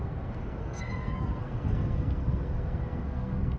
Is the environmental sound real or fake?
fake